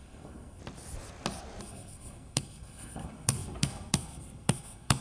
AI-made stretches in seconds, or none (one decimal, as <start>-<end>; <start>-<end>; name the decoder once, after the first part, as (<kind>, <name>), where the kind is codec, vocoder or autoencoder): 0.0-0.6 (codec, SNAC); 1.6-5.0